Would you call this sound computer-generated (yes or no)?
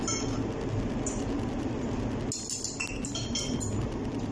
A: no